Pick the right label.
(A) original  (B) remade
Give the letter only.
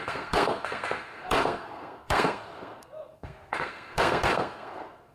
B